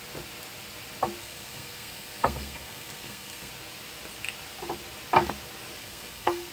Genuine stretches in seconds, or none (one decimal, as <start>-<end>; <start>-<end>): 0.0-1.2; 3.5-5.8